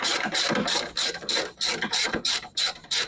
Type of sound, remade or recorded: remade